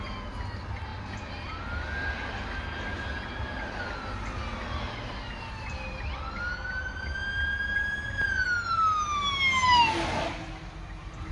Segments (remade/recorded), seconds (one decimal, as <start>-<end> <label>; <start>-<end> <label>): 0.0-11.3 recorded